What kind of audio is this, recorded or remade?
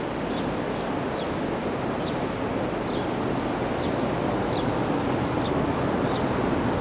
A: recorded